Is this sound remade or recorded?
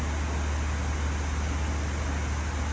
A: recorded